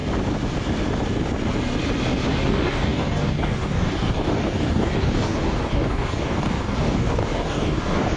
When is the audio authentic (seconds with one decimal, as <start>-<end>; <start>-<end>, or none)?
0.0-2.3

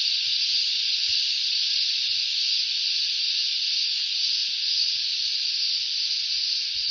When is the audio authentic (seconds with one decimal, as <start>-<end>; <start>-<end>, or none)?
0.0-1.1; 2.0-6.9

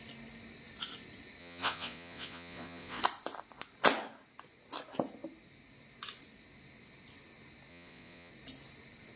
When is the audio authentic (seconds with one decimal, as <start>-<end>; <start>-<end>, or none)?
0.0-1.4; 3.0-7.7; 8.3-9.2

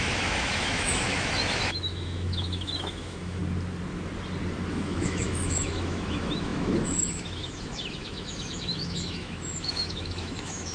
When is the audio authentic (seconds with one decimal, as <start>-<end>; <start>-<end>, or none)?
3.4-4.7